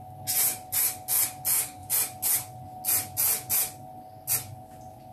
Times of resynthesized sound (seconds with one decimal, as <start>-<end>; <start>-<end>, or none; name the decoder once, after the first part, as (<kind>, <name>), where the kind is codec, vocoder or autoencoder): none